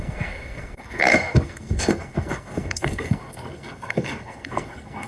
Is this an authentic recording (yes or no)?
no